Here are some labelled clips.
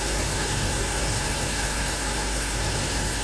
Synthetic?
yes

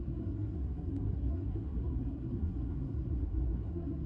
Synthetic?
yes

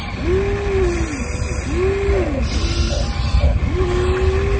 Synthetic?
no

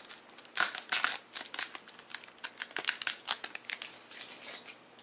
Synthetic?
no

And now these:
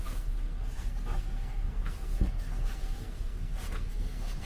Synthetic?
yes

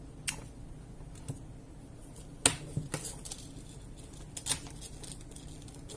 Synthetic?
no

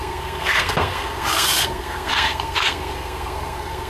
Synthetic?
yes